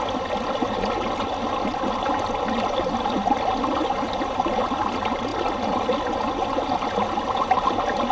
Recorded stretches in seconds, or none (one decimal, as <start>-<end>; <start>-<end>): 0.0-8.1